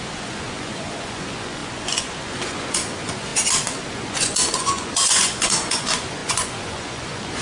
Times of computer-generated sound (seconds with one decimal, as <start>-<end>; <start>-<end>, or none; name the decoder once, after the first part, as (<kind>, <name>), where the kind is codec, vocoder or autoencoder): 0.0-3.3 (vocoder, Vocos); 3.9-7.4